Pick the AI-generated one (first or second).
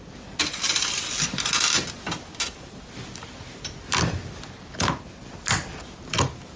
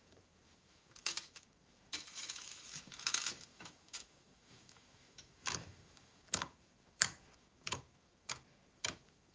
second